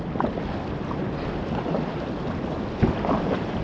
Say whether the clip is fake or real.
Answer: real